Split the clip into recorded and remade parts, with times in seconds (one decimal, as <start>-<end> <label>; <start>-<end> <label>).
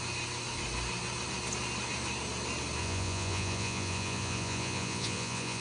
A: 0.0-2.8 recorded; 2.8-5.6 remade